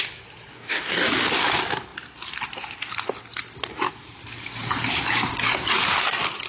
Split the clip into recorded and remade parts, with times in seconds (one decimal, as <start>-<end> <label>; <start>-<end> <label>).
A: 0.0-0.5 recorded; 0.5-1.1 remade; 1.1-6.5 recorded